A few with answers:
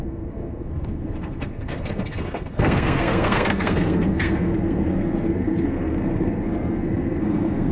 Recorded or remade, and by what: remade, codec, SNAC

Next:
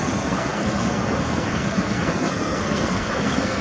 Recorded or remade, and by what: remade, codec, SNAC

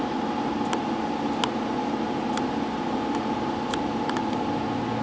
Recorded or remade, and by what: recorded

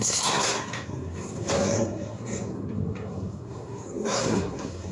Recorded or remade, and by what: remade, codec, SNAC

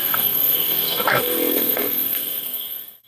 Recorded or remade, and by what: remade, codec, SNAC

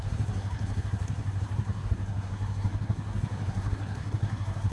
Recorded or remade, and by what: remade, codec, SNAC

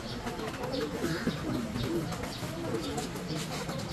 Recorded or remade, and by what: recorded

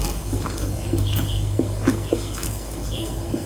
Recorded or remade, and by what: remade, codec, SNAC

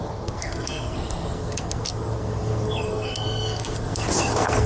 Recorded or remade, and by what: remade, codec, SNAC